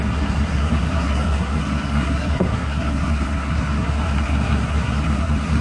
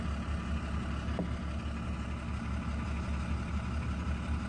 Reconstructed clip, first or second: first